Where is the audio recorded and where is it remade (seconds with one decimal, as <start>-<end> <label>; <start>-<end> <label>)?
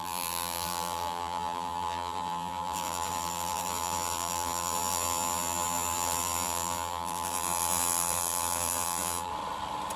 0.0-9.3 remade; 9.3-10.0 recorded